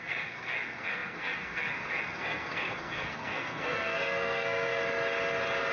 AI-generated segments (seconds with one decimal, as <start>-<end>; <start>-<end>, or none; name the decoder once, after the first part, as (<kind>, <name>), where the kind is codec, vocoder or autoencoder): 0.0-4.8 (codec, SNAC)